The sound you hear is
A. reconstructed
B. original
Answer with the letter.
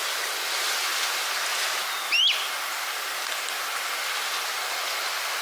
B